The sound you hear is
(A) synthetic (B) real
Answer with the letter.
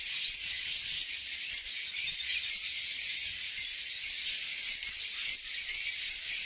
A